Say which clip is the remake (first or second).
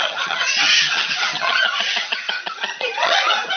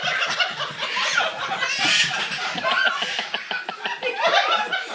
first